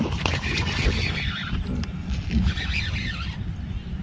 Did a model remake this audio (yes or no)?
no